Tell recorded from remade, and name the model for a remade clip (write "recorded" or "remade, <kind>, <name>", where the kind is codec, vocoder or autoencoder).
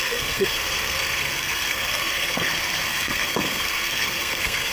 remade, codec, SNAC